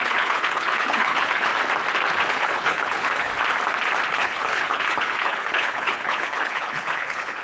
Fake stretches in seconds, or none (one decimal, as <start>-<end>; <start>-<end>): 0.0-1.5; 2.3-3.3; 4.1-7.4